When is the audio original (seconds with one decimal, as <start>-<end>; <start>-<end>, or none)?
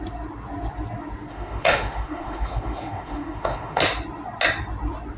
0.0-1.3; 3.8-5.2